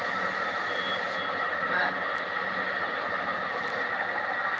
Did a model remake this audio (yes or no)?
no